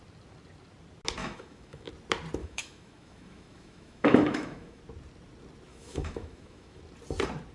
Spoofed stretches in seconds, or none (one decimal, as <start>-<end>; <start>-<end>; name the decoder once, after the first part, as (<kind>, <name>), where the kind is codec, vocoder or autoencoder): 1.2-1.9 (autoencoder, DAC-VAE); 2.4-4.8; 5.7-6.8